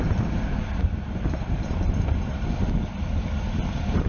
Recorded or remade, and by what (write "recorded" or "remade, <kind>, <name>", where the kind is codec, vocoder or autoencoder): recorded